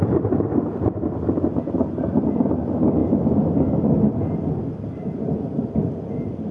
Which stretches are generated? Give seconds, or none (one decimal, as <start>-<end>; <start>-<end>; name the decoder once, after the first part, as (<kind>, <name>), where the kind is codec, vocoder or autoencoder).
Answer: none